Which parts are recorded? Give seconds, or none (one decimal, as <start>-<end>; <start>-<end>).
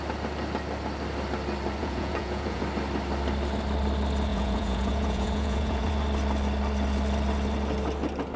0.0-1.8; 2.6-4.3; 5.9-8.4